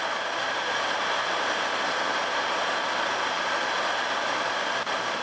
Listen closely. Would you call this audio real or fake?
fake